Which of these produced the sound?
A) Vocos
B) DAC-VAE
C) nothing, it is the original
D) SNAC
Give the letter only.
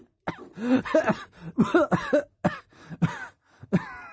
C